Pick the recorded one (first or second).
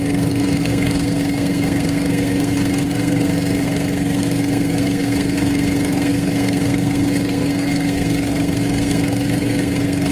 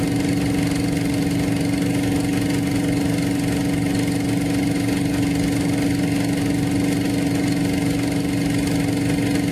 second